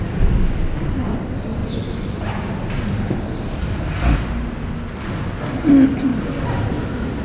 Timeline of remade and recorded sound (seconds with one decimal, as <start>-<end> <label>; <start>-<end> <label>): 0.0-7.2 recorded